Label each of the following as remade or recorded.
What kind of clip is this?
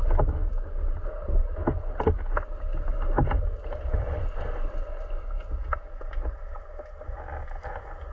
recorded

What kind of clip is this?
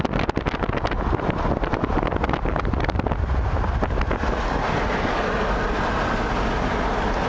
recorded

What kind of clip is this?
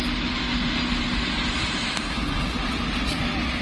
recorded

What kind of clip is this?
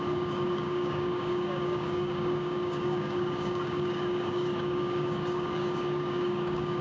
remade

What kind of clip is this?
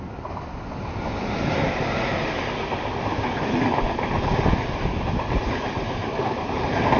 recorded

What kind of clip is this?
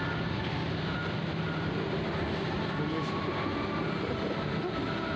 recorded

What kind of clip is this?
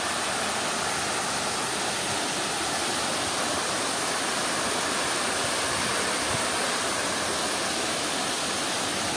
recorded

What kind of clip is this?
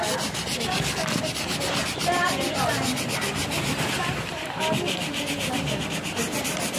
recorded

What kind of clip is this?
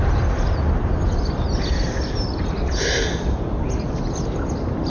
recorded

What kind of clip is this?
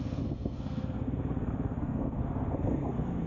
remade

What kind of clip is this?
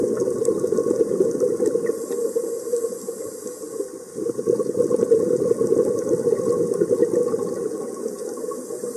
recorded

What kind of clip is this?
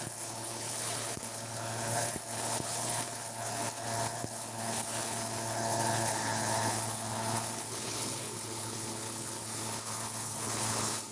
remade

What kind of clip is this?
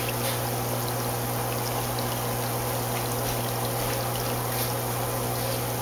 recorded